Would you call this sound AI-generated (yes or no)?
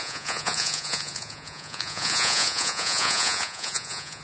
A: yes